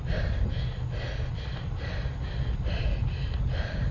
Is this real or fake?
real